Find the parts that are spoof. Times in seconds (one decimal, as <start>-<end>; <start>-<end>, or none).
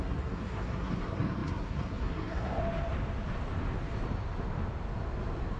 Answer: 0.0-2.6